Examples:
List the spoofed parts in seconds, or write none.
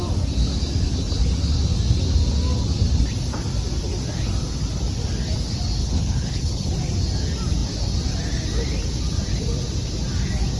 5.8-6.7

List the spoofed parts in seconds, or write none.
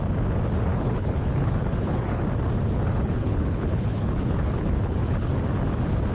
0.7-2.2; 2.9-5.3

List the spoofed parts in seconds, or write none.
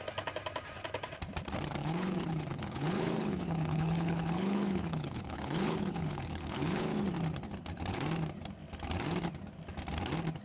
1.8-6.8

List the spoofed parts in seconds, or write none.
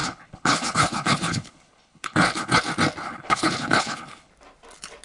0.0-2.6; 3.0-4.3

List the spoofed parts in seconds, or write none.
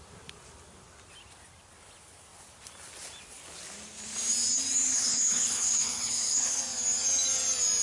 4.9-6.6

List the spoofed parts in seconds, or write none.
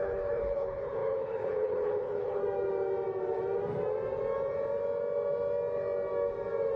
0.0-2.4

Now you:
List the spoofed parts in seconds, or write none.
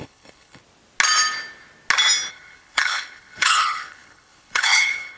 0.0-0.6; 2.3-5.2